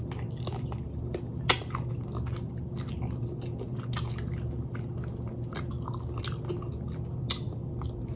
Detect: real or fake real